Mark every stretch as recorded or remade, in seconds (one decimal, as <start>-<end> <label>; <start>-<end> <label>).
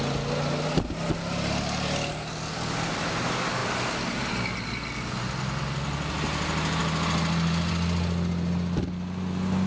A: 0.0-9.7 recorded